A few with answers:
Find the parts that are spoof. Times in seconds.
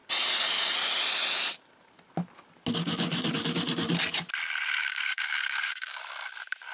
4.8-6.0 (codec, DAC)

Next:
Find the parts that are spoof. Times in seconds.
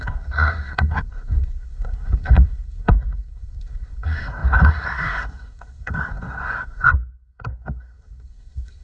0.0-8.8 (codec, SNAC)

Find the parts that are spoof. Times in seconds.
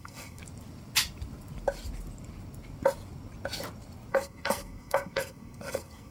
0.0-0.4 (codec, SNAC); 4.1-6.1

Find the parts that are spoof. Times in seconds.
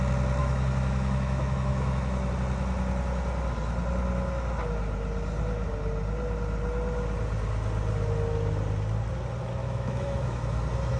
0.4-2.3 (autoencoder, DAC-VAE); 9.6-10.6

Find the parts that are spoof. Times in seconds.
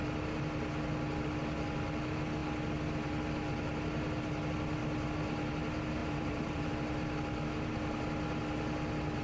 6.0-6.7 (vocoder, BigVGAN v2)